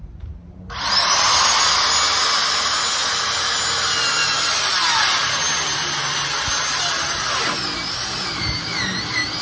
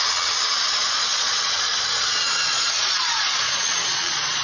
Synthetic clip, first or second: second